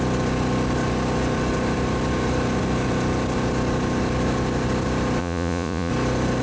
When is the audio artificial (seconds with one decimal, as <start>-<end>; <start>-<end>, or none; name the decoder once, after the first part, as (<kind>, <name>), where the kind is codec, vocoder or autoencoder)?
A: 5.2-5.9 (vocoder, Vocos)